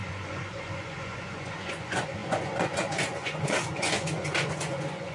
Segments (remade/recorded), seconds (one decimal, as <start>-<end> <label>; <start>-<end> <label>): 0.0-5.1 remade